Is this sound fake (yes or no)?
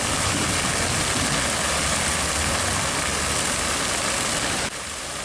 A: no